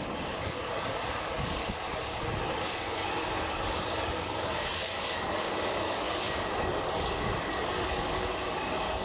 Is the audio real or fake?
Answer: fake